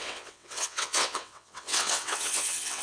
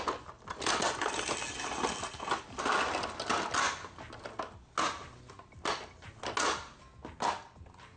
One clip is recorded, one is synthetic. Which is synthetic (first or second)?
first